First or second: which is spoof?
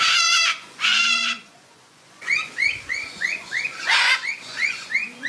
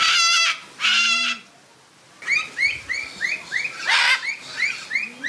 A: first